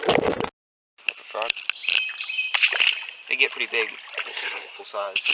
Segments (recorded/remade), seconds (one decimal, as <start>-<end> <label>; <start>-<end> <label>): 0.0-4.3 recorded; 4.3-4.8 remade; 4.8-5.3 recorded